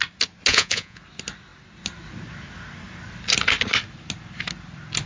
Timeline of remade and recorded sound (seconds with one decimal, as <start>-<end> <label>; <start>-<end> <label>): 0.0-0.5 recorded; 0.5-1.0 remade; 1.0-5.1 recorded